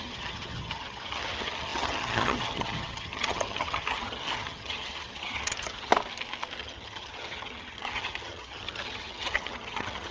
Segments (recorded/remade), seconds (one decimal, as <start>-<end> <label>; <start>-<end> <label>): 0.0-5.9 remade; 5.9-6.6 recorded; 6.6-10.1 remade

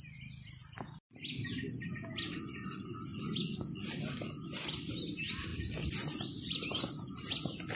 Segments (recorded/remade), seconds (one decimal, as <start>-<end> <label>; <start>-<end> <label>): 0.0-7.8 recorded

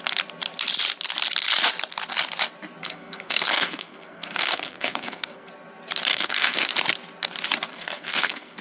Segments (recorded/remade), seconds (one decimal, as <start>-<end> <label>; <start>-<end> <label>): 0.0-2.8 recorded; 2.8-5.5 remade; 5.5-6.1 recorded; 6.1-6.7 remade; 6.7-7.7 recorded; 7.7-8.6 remade

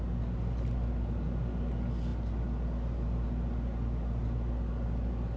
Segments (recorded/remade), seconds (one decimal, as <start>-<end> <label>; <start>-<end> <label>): 0.0-5.4 recorded